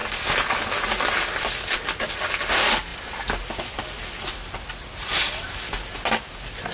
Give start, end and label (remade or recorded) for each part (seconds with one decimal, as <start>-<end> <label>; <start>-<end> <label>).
0.0-6.7 recorded